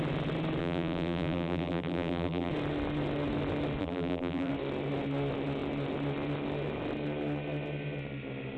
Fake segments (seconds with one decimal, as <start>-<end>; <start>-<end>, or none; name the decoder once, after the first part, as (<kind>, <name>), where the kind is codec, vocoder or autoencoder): 0.6-2.5 (vocoder, BigVGAN v2); 3.8-4.5